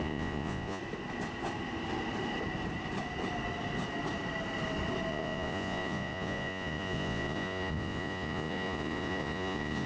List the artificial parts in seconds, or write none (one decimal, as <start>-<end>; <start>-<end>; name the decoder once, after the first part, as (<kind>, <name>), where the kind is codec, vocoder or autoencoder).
0.0-0.8 (vocoder, Vocos); 5.1-9.9